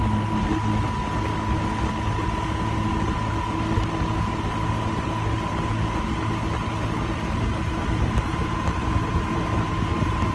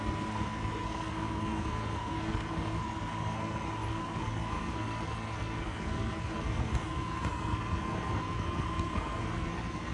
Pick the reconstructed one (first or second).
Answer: second